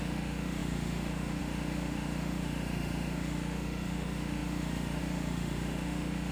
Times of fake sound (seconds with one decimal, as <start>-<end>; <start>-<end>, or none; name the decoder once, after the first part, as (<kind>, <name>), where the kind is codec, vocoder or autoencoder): 0.0-6.3 (autoencoder, DAC-VAE)